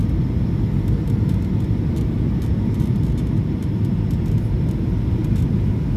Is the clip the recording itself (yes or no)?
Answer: yes